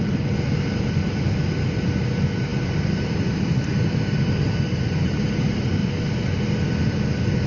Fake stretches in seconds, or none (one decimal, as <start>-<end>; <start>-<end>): none